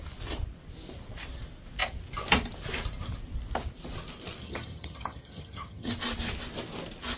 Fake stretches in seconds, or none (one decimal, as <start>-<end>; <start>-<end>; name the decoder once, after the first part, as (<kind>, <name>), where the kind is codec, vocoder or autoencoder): 4.4-5.9 (vocoder, HiFi-GAN)